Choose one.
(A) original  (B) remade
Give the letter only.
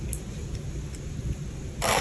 A